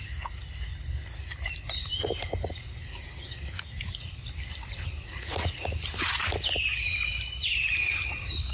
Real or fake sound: real